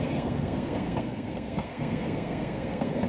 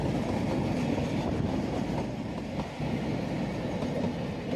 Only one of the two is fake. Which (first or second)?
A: first